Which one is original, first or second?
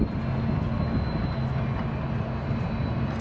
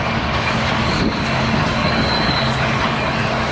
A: first